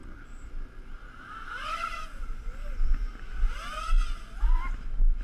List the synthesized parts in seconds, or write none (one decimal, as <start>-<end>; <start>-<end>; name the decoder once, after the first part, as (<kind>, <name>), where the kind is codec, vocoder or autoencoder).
none